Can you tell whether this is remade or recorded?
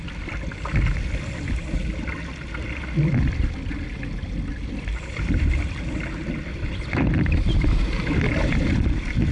recorded